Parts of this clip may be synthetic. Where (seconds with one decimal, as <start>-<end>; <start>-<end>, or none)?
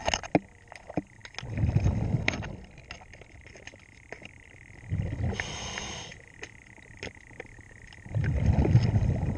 none